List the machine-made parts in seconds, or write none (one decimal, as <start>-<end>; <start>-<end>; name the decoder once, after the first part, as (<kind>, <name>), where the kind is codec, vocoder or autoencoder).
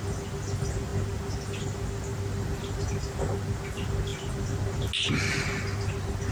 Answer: none